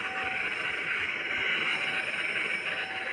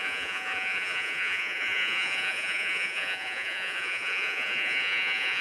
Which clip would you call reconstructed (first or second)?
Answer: second